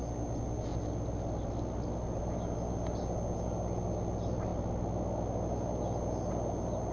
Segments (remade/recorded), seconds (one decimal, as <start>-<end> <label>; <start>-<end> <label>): 0.0-6.9 recorded